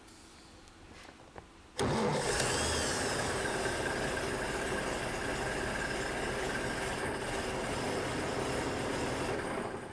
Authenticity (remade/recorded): recorded